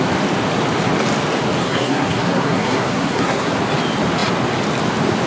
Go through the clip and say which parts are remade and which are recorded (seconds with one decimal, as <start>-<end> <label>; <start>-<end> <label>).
0.0-1.6 recorded; 1.6-3.5 remade; 3.5-5.3 recorded